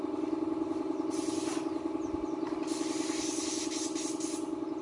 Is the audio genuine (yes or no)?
yes